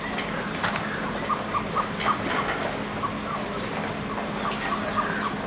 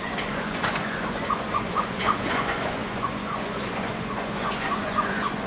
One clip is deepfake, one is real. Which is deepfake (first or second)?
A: second